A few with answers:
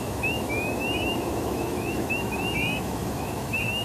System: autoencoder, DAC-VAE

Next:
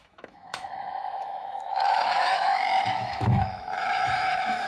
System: autoencoder, DAC-VAE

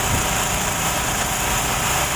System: none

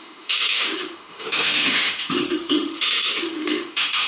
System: autoencoder, DAC-VAE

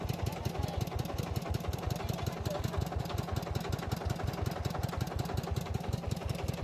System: none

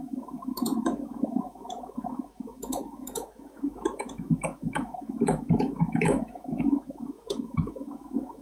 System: autoencoder, DAC-VAE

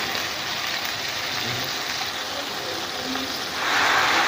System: none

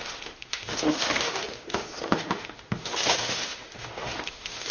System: autoencoder, DAC-VAE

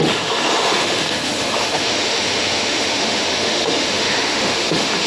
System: autoencoder, DAC-VAE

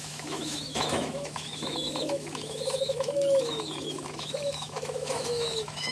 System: autoencoder, DAC-VAE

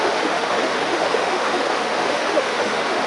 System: autoencoder, DAC-VAE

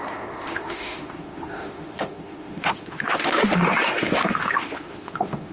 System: autoencoder, DAC-VAE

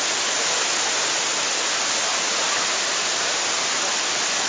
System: none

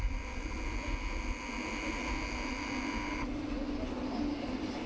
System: none